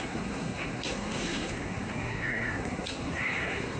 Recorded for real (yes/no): no